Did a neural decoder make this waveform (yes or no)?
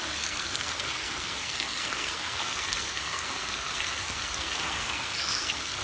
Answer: yes